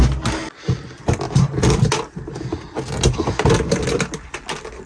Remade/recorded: recorded